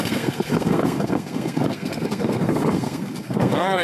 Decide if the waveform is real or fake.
fake